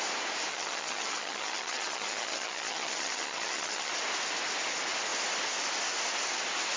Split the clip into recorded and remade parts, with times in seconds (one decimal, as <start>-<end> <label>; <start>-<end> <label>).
0.0-0.5 recorded; 0.5-3.9 remade; 3.9-6.8 recorded